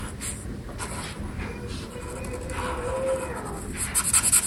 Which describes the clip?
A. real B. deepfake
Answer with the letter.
A